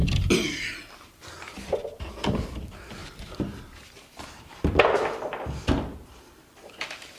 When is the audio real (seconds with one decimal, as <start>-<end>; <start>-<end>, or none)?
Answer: 1.2-3.0